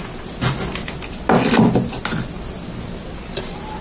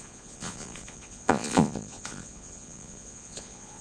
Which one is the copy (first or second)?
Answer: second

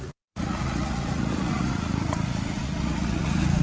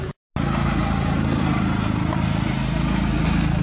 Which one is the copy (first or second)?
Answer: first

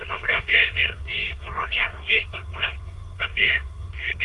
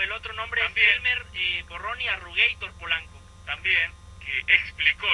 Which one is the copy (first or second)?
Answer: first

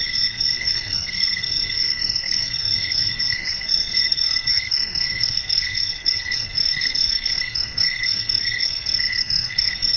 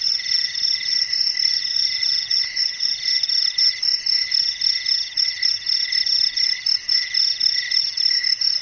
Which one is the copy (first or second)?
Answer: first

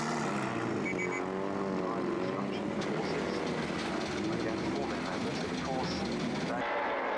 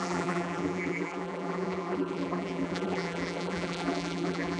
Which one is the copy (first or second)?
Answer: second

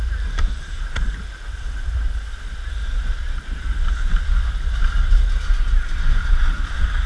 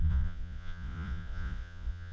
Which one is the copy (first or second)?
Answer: second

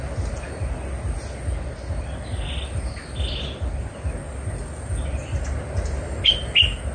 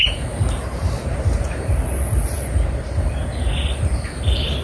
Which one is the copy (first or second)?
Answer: second